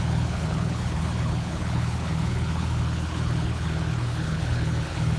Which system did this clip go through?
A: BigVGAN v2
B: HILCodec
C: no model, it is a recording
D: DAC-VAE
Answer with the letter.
B